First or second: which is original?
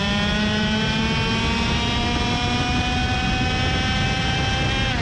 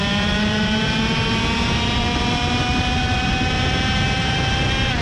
first